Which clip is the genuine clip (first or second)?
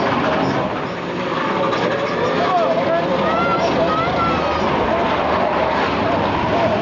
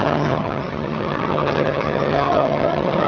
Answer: first